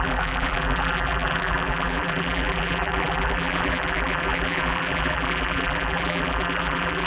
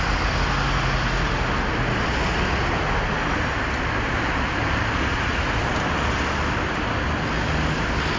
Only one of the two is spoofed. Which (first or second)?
first